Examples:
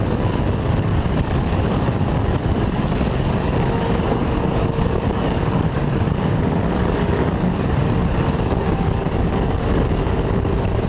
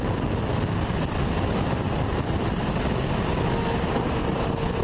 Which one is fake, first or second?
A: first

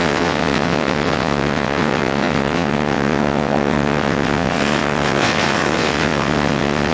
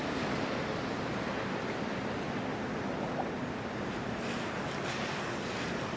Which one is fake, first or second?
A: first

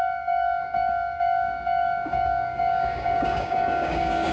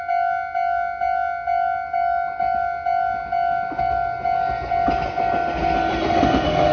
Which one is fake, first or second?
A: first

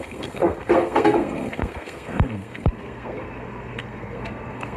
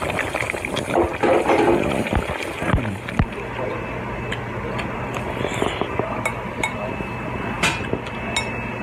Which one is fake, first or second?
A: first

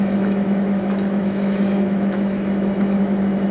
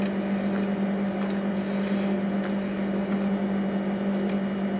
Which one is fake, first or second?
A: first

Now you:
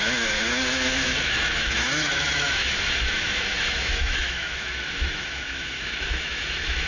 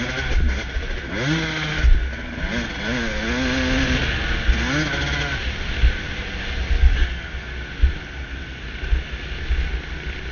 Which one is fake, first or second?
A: first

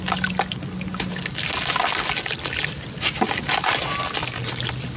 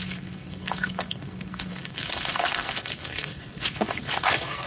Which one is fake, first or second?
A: second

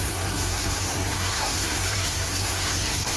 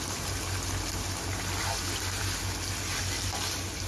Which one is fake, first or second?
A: first